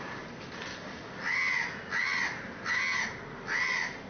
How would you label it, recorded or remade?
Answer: recorded